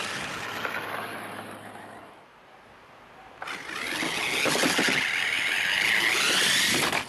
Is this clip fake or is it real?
real